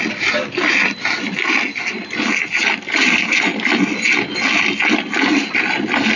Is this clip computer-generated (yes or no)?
no